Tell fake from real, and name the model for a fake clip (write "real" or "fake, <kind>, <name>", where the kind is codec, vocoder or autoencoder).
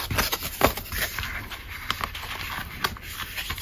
real